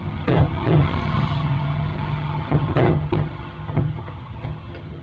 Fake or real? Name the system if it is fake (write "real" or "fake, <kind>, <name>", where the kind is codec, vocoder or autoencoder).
fake, vocoder, HiFi-GAN